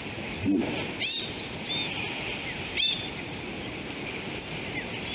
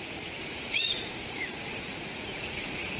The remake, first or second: second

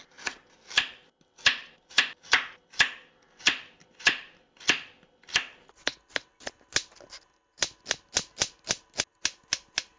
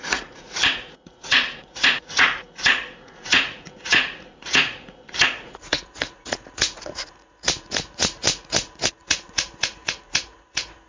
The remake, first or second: second